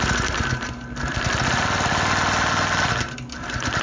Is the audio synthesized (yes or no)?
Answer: no